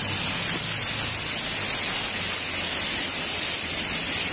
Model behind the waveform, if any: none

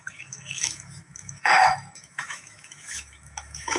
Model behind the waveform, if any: autoencoder, DAC-VAE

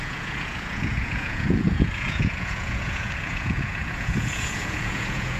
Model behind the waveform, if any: vocoder, Vocos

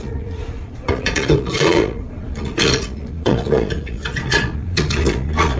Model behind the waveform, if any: vocoder, Vocos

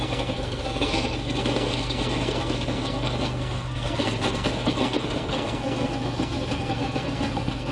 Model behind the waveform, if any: codec, SNAC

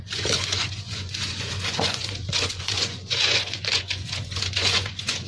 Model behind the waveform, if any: vocoder, Vocos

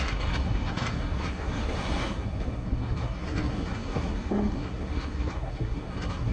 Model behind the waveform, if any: codec, SNAC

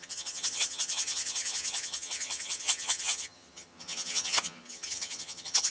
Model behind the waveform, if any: vocoder, HiFi-GAN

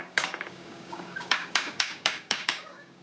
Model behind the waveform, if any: codec, DAC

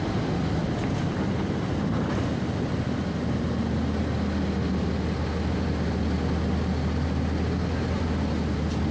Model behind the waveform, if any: none